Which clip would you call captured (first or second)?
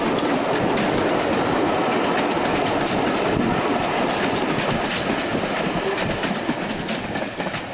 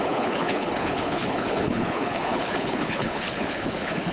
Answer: first